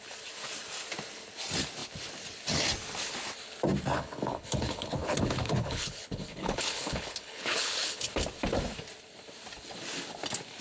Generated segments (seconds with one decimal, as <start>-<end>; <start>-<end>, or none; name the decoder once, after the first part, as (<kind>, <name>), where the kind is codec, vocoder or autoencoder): 3.9-8.1 (codec, HILCodec)